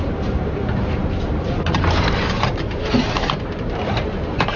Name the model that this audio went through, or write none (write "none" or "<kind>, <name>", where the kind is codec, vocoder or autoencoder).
vocoder, BigVGAN v2